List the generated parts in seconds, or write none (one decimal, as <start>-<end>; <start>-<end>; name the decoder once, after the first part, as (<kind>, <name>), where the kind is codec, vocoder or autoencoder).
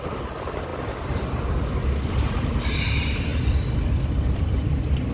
none